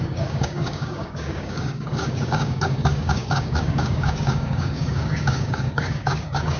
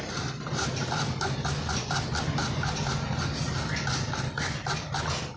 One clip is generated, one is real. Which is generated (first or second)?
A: first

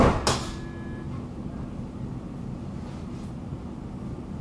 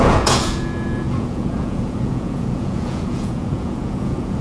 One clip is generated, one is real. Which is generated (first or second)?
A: second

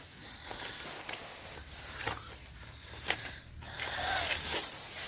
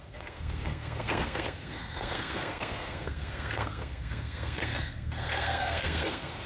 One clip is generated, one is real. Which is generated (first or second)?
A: second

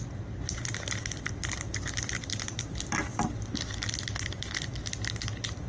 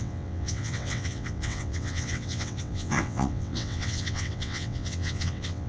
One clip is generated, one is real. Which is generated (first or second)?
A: second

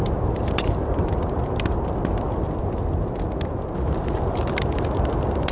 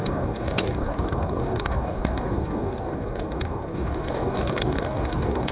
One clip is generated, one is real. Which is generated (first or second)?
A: second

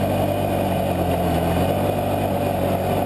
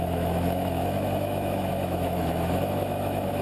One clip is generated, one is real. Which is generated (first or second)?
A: second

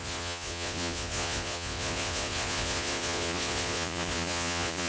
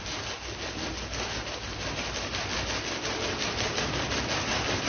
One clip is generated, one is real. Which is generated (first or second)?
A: first